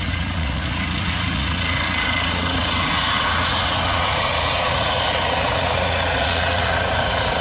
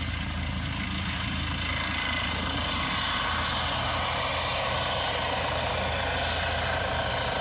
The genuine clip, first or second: second